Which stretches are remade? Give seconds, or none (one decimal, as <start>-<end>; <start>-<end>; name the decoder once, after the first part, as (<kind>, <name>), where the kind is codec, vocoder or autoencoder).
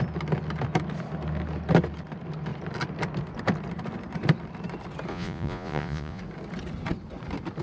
5.1-6.2 (vocoder, Vocos)